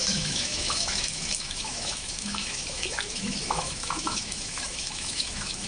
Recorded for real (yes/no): no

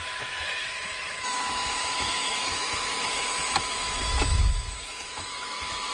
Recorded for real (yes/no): no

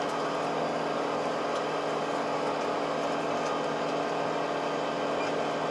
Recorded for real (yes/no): yes